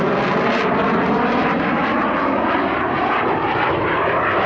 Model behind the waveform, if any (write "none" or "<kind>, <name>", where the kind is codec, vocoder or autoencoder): none